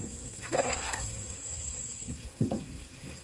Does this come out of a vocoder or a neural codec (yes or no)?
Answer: yes